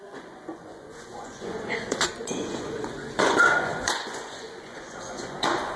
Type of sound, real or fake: fake